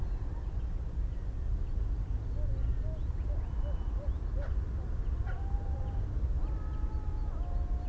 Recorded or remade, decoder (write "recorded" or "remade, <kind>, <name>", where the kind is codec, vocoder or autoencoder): recorded